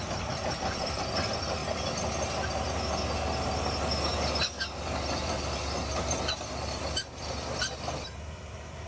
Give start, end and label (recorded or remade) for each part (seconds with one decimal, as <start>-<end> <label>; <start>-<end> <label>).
0.0-1.6 remade; 1.6-4.7 recorded; 4.7-8.9 remade